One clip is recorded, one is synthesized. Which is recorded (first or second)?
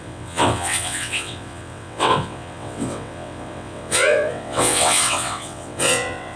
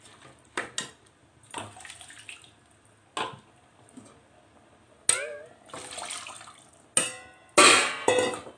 second